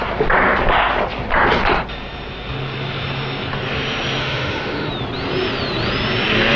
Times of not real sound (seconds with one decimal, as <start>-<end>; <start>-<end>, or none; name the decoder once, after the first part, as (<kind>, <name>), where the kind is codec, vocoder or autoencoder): 4.2-4.9 (autoencoder, DAC-VAE)